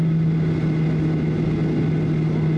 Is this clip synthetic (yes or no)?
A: no